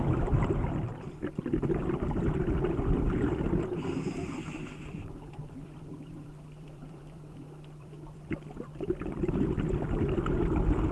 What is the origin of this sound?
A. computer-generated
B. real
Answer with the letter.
A